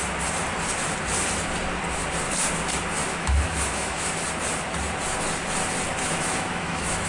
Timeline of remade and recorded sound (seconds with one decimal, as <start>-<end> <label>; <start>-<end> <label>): 0.0-3.0 recorded; 3.0-4.2 remade; 4.2-6.0 recorded; 6.0-7.1 remade